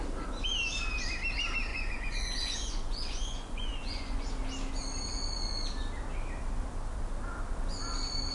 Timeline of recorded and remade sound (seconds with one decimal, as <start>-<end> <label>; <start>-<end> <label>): 0.0-1.7 recorded; 1.7-4.3 remade; 4.3-8.3 recorded